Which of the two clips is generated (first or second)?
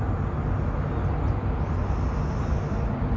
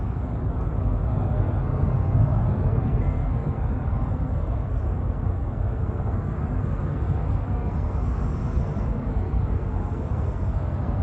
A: second